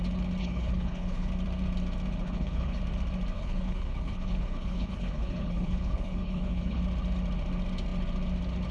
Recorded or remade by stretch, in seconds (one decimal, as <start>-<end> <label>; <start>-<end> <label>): 0.0-0.4 recorded; 0.4-1.3 remade; 1.3-2.2 recorded; 2.2-2.8 remade; 2.8-3.3 recorded; 3.3-6.8 remade; 6.8-8.7 recorded